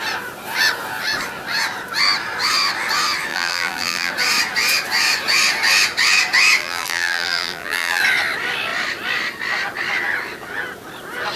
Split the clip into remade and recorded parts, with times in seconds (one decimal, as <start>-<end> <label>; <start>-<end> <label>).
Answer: 0.0-3.3 recorded; 3.3-4.1 remade; 4.1-6.6 recorded; 6.6-8.0 remade; 8.0-11.4 recorded